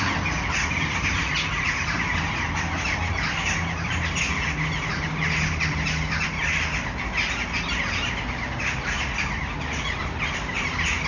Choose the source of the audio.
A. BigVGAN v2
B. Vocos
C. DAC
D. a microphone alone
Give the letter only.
D